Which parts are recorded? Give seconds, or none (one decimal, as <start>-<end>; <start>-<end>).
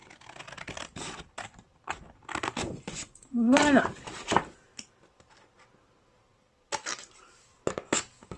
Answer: 0.0-2.6; 3.8-8.4